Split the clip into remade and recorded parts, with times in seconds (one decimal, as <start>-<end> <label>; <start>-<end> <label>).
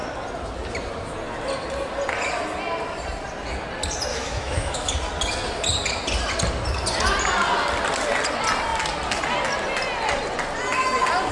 0.0-4.1 recorded; 4.1-4.9 remade; 4.9-11.3 recorded